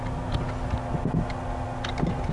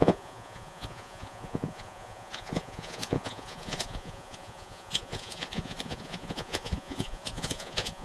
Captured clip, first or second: first